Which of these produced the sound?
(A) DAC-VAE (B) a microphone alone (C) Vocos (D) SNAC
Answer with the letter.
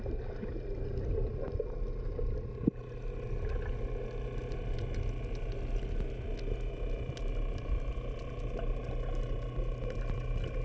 B